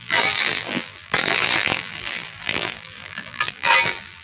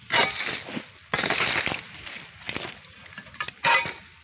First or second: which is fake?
first